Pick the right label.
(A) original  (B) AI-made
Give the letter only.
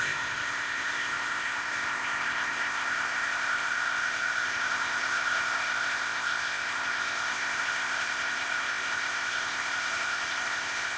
B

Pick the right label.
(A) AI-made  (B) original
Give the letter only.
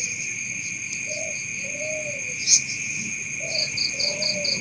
B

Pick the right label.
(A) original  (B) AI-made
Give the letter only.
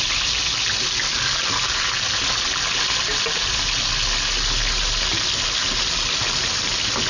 A